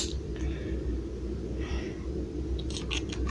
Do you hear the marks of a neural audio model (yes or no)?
no